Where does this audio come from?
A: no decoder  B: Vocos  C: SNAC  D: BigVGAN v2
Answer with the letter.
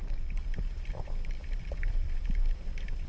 A